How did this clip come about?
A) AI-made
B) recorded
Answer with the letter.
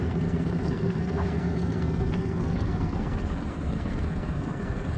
A